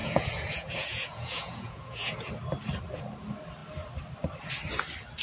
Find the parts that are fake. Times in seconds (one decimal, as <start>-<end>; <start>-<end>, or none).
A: 0.0-2.3